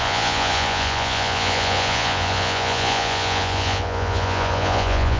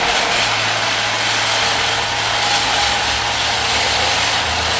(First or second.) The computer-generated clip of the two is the first